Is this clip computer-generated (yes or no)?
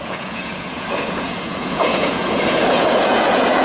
yes